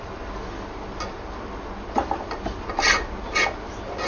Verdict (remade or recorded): recorded